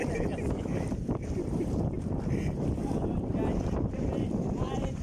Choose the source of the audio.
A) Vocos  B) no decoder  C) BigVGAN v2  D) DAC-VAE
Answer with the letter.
C